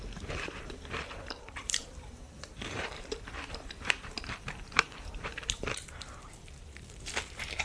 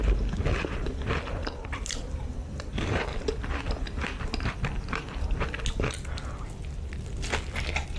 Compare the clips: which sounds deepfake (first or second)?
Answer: first